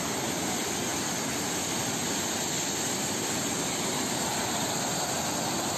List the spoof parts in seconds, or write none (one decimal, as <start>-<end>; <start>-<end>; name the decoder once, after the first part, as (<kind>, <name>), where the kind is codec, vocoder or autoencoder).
none